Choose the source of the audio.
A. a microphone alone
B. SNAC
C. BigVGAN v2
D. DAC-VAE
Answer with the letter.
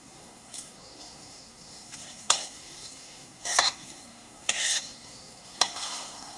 B